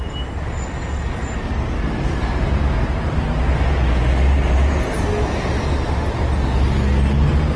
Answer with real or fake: real